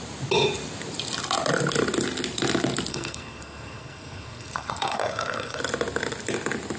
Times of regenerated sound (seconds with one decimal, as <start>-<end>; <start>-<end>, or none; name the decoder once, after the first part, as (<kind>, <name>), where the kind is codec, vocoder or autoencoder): 2.9-5.6 (codec, SNAC)